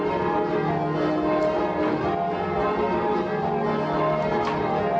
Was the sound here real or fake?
real